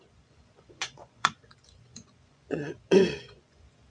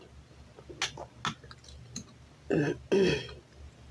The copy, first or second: first